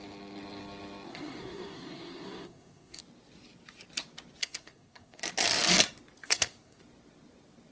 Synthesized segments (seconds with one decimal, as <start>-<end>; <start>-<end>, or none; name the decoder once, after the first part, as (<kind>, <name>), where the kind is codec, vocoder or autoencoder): 1.1-3.0 (codec, SNAC); 4.4-5.2; 6.2-6.8